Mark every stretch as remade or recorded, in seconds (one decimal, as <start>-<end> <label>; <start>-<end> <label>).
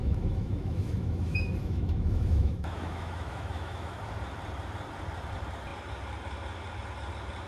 0.0-4.0 remade; 4.0-7.5 recorded